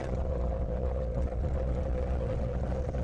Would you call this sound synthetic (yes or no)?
yes